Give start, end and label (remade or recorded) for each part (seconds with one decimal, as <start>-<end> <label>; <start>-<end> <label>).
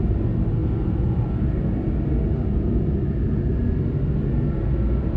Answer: 0.0-5.2 recorded